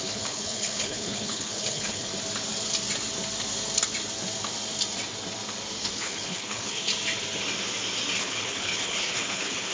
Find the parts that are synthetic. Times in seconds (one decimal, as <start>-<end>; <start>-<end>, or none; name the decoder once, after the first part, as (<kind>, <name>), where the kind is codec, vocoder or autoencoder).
0.0-2.1 (codec, HILCodec); 5.8-6.9; 8.2-9.7